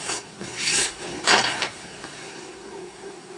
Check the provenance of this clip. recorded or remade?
remade